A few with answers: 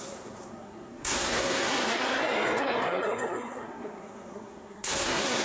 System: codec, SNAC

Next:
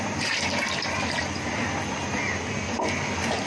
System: none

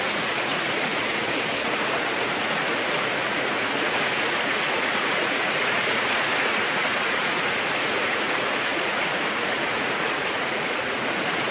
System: vocoder, Vocos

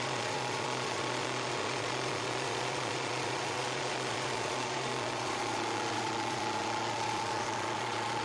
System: vocoder, Vocos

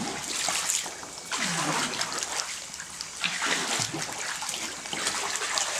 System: none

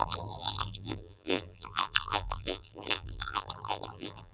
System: vocoder, BigVGAN v2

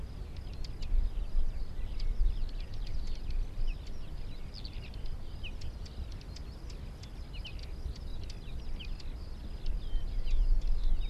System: none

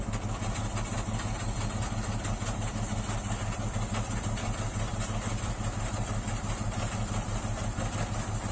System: none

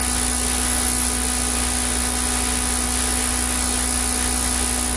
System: none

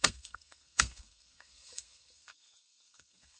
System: codec, SNAC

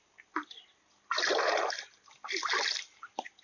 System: none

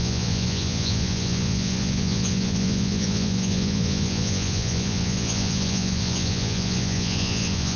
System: vocoder, Vocos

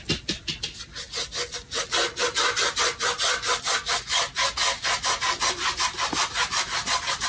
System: none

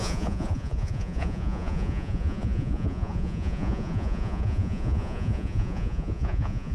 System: vocoder, Vocos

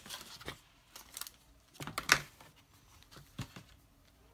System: none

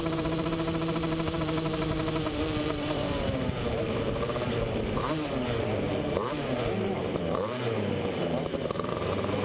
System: vocoder, BigVGAN v2